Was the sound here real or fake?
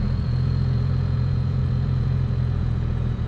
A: fake